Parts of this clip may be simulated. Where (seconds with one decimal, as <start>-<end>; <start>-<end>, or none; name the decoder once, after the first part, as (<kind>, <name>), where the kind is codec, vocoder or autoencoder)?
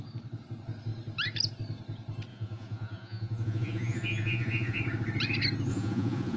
2.3-4.8 (vocoder, Vocos); 5.7-6.4